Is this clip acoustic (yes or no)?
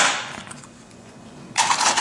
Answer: no